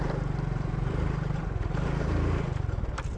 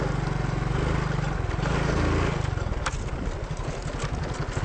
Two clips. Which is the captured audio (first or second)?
second